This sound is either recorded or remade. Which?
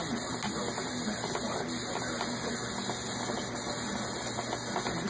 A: recorded